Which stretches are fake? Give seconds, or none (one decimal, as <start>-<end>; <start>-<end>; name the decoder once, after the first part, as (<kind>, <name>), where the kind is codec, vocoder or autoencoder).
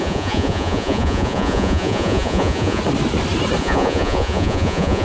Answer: 0.0-2.8 (vocoder, Vocos); 3.6-5.0